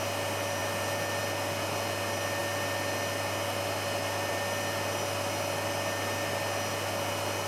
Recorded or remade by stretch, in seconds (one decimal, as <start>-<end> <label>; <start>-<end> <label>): 0.0-7.5 recorded